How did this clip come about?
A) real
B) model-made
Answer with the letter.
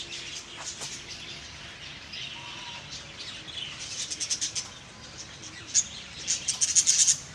A